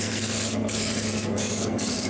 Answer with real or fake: fake